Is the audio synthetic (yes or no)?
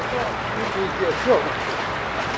no